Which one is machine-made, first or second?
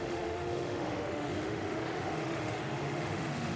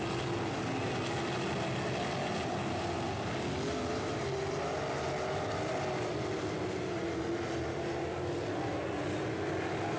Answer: first